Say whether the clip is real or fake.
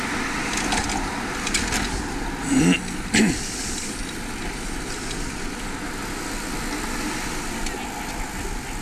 real